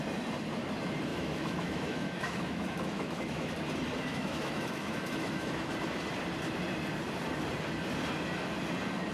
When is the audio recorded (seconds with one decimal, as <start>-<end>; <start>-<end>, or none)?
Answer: 0.0-1.1; 3.5-4.1; 5.7-9.1